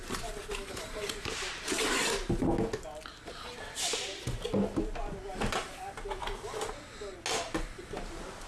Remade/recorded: recorded